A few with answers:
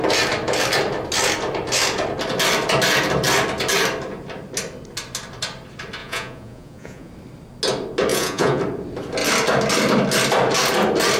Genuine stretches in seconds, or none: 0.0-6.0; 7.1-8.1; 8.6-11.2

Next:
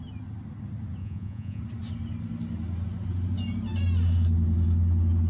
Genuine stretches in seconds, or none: 0.0-1.0; 1.6-5.3

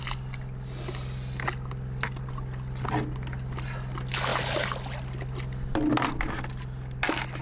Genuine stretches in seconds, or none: 0.0-7.4

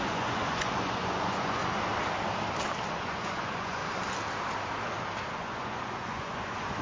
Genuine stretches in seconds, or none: 1.6-2.9; 3.8-5.4